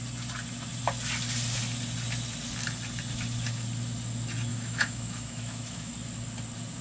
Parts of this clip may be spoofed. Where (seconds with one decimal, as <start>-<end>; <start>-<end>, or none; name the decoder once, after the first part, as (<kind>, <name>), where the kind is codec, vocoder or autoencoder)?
4.5-5.9 (autoencoder, DAC-VAE)